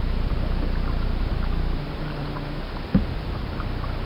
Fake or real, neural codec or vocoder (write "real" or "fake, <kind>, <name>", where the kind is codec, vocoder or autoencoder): real